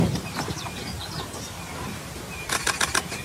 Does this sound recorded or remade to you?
remade